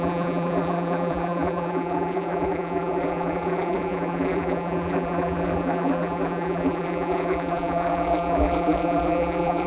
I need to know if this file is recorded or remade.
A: remade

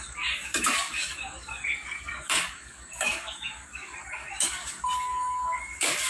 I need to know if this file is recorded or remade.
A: remade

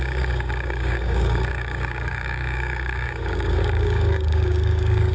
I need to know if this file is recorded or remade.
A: remade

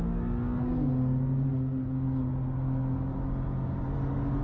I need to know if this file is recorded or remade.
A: recorded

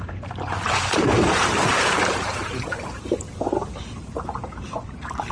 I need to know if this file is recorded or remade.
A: remade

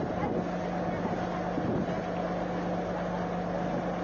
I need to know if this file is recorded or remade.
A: recorded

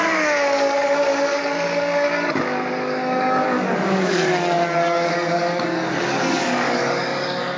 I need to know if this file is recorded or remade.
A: remade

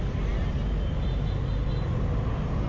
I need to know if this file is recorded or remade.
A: recorded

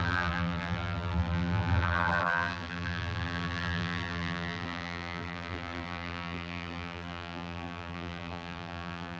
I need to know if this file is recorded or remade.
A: remade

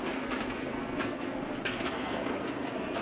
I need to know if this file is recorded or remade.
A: remade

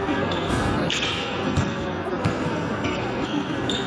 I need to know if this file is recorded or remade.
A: remade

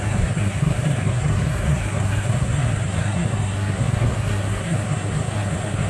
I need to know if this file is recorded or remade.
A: remade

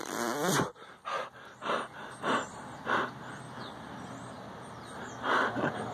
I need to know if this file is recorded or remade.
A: recorded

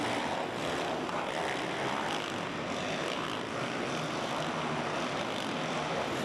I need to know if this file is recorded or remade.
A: recorded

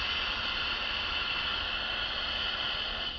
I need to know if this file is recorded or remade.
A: recorded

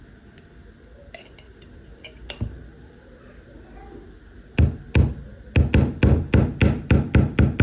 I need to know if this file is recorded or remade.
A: recorded